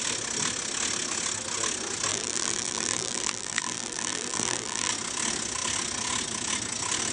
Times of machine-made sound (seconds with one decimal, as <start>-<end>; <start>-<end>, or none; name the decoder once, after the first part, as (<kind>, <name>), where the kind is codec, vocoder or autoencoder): 2.1-4.9 (vocoder, BigVGAN v2)